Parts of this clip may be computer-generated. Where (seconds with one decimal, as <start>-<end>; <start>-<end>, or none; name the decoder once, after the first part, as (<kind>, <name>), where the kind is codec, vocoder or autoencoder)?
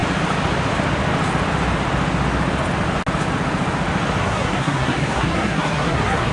4.2-6.3 (codec, SNAC)